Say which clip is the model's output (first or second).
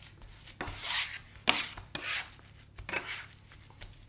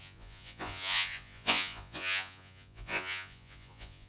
second